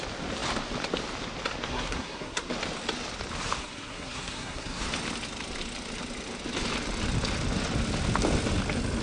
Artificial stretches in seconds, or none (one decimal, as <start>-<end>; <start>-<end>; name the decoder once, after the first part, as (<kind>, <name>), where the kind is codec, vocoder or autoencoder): 1.7-2.5 (codec, SNAC); 3.6-4.8